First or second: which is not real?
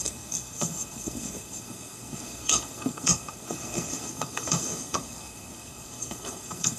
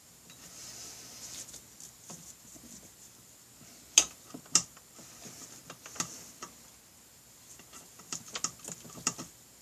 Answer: first